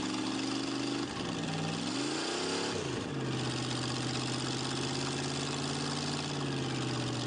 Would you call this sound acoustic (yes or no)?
yes